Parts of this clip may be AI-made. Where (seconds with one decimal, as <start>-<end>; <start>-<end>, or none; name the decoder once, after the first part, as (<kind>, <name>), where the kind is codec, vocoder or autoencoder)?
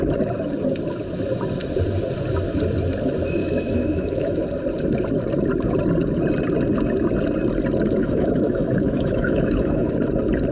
3.4-4.4 (autoencoder, DAC-VAE); 8.0-9.9